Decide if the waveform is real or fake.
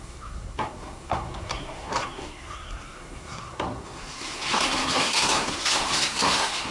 fake